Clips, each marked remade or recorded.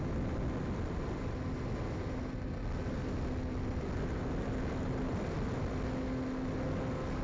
recorded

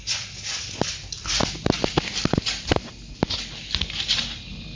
recorded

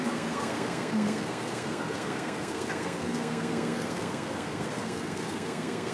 remade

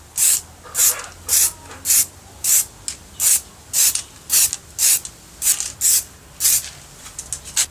recorded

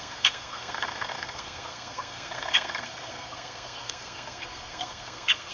remade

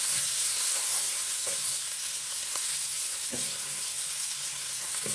remade